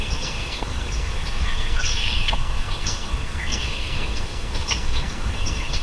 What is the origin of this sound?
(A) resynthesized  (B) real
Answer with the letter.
A